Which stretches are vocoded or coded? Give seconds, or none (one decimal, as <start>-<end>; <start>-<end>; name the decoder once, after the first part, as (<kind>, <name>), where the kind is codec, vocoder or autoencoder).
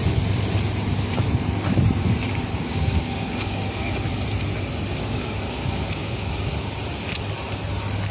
2.5-3.9 (codec, DAC); 4.9-6.3